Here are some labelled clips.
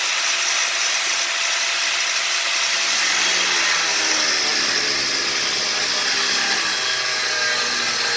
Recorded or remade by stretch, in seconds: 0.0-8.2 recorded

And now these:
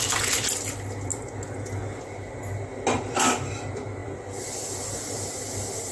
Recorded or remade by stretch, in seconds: 0.0-5.9 recorded